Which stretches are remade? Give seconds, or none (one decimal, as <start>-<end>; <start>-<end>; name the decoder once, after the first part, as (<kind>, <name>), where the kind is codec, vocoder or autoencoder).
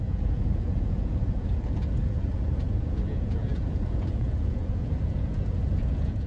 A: 0.0-6.3 (vocoder, Vocos)